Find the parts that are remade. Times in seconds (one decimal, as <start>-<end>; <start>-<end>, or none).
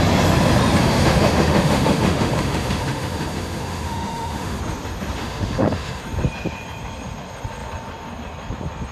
0.8-4.6; 5.2-6.0